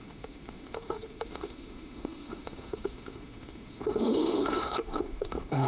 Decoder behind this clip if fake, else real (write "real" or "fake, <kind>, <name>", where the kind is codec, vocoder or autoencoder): fake, autoencoder, DAC-VAE